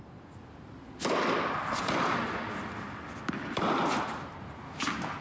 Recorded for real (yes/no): yes